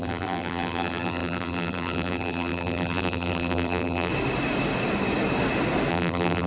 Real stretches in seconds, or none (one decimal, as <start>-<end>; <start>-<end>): 4.1-5.9